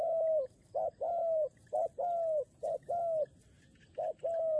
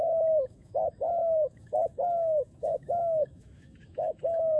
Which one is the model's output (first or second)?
second